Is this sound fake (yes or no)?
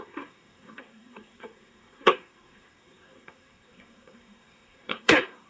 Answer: yes